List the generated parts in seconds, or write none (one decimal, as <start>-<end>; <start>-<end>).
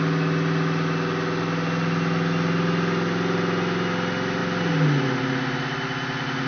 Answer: none